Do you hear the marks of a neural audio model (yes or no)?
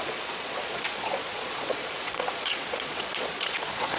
yes